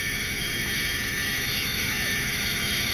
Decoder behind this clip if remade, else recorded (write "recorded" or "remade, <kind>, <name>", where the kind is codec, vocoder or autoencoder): remade, autoencoder, DAC-VAE